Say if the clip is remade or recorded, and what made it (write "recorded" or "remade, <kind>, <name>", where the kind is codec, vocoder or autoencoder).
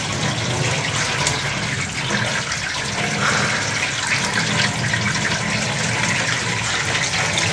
recorded